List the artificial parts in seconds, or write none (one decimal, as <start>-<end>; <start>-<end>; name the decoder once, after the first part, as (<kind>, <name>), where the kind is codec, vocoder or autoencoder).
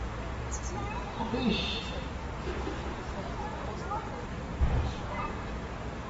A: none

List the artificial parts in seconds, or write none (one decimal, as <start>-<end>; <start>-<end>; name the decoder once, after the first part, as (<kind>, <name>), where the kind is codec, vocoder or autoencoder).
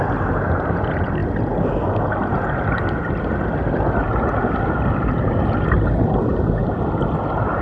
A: 6.6-7.6 (vocoder, BigVGAN v2)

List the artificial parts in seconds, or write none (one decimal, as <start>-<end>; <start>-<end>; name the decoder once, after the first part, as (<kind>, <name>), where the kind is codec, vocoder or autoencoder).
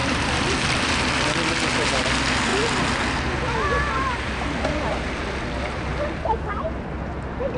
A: 0.0-1.0 (vocoder, BigVGAN v2)